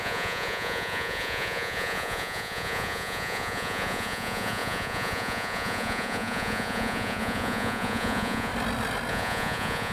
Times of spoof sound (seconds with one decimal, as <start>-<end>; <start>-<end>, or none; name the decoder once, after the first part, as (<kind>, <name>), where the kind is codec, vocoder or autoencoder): 0.0-8.5 (vocoder, Vocos); 9.1-9.9